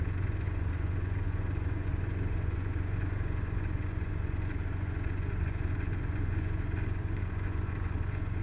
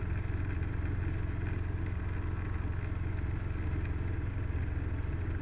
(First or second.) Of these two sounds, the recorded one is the second